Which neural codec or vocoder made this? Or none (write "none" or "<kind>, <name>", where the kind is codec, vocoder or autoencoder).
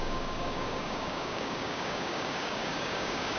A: codec, DAC